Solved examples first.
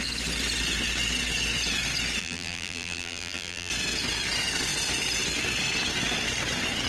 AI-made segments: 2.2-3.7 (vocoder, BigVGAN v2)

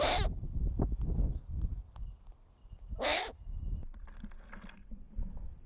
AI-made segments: 1.7-2.4 (vocoder, BigVGAN v2)

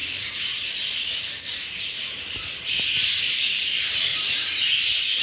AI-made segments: 0.0-5.2 (vocoder, BigVGAN v2)

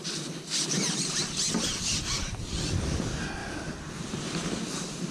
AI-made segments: 3.4-4.3 (vocoder, BigVGAN v2)

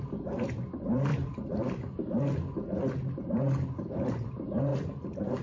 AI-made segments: 0.0-5.4 (vocoder, BigVGAN v2)

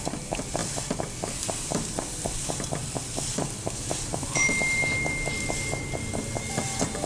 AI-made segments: 0.0-0.6 (vocoder, BigVGAN v2); 1.7-7.1

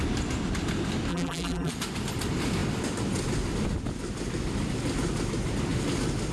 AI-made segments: 1.1-1.7 (vocoder, BigVGAN v2)

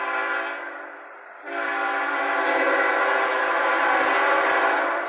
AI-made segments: 0.0-1.7 (vocoder, BigVGAN v2); 4.6-5.1